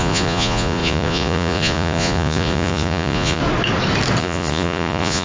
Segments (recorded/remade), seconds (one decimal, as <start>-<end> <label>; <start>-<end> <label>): 0.0-3.4 remade; 3.4-4.2 recorded; 4.2-5.2 remade